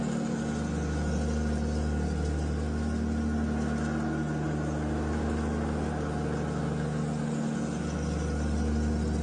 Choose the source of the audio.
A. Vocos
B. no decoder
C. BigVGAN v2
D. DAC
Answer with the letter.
B